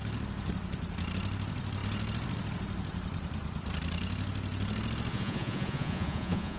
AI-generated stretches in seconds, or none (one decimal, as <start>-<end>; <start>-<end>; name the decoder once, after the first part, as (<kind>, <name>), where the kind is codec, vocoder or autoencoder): 5.1-6.6 (vocoder, Vocos)